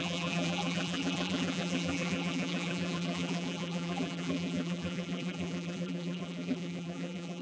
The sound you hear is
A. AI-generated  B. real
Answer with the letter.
A